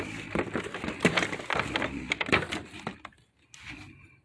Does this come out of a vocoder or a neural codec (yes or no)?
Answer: no